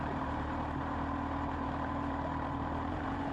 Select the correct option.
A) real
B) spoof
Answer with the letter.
B